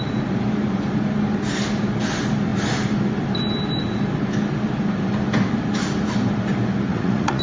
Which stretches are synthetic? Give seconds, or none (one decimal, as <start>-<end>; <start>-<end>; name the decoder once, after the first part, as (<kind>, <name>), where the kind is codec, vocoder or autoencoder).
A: 6.9-7.4 (vocoder, Vocos)